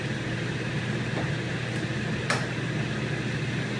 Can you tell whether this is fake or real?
real